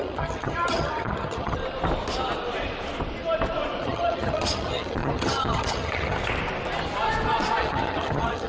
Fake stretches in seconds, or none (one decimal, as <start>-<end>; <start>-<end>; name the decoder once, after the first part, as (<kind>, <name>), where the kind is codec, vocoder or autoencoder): 0.0-1.6 (vocoder, HiFi-GAN); 3.8-6.2; 7.6-8.5